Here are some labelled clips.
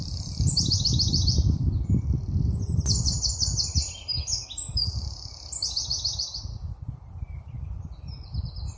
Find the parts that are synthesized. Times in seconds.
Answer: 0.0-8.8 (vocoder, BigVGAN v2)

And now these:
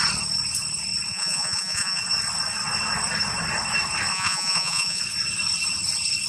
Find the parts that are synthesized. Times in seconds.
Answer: 1.1-2.0 (vocoder, Vocos); 4.1-5.0

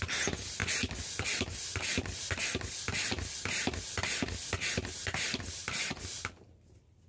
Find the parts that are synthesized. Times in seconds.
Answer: none

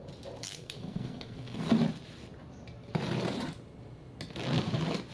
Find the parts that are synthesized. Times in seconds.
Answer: 0.4-1.7 (codec, SNAC)

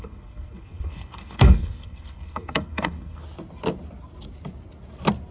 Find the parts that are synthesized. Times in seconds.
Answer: 0.0-3.2 (codec, SNAC)

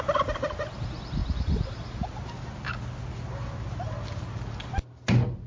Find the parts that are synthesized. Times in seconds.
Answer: none